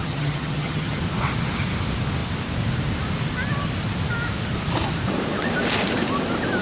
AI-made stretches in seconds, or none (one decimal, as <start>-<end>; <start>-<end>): 0.0-1.0